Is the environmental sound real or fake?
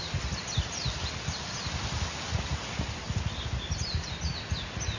real